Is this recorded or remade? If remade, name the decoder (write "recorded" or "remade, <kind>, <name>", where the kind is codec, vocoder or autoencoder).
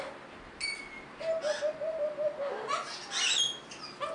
recorded